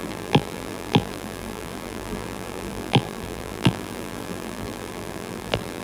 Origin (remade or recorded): remade